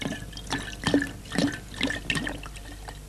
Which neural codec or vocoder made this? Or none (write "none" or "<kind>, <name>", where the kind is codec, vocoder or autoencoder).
none